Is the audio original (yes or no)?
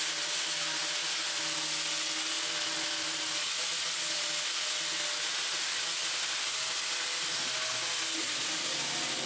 yes